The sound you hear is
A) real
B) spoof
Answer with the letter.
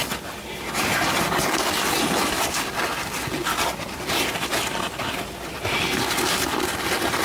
A